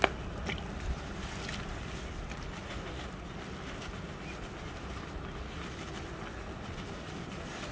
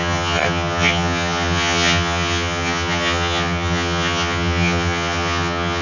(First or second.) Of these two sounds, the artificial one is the second